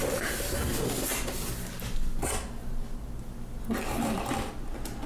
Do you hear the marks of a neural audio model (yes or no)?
no